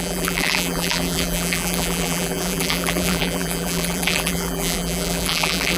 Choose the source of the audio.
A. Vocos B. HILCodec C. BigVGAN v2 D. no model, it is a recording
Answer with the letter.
C